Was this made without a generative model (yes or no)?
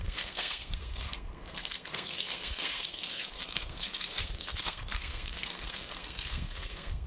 no